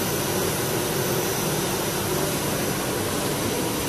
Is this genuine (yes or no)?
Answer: yes